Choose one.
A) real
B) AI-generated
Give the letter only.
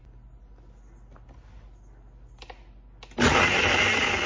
A